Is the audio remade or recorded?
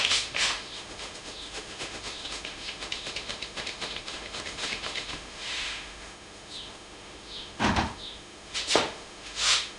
remade